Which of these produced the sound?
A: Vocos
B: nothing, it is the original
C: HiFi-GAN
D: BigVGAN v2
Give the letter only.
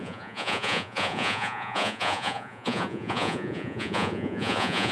A